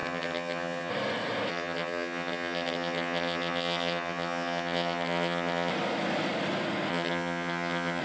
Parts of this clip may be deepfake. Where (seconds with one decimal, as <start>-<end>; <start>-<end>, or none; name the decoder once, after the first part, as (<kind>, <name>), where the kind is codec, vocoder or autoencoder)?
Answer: 0.0-0.9 (vocoder, HiFi-GAN); 1.5-5.7; 6.9-8.0